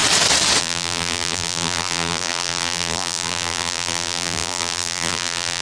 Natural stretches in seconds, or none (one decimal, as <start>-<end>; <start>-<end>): 0.0-0.6